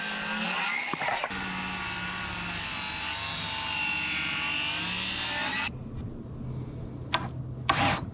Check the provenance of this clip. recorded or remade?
recorded